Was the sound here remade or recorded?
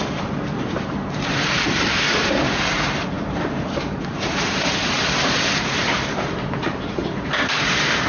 remade